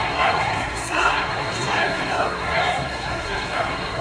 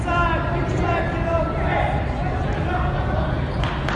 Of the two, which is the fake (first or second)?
first